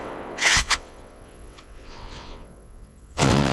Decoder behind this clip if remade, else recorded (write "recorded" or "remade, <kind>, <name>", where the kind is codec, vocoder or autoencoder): remade, vocoder, WaveNeXt